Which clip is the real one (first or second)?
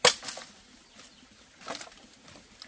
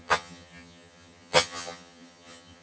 first